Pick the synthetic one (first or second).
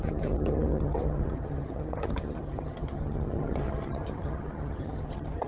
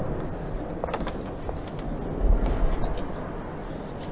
first